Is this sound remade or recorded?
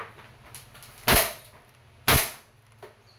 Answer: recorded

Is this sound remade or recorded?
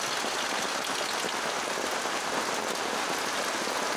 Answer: recorded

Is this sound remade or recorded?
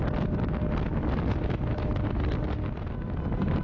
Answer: recorded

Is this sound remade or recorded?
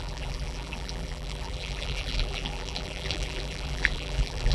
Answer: remade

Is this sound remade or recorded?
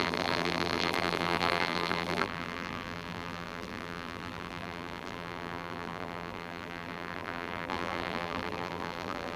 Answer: remade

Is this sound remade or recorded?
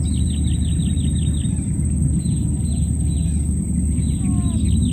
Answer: recorded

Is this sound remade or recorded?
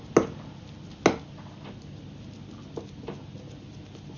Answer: recorded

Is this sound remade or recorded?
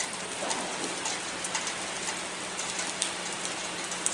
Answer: recorded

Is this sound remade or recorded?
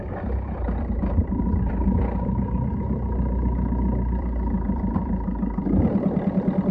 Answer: remade